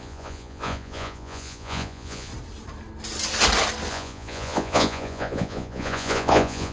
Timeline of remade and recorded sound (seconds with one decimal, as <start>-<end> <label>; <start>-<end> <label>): 0.0-2.3 remade; 2.3-3.9 recorded; 3.9-6.7 remade